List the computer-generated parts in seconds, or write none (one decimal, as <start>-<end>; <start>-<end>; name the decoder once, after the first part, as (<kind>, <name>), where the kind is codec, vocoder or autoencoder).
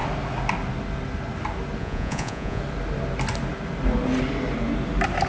1.8-2.6 (vocoder, Vocos)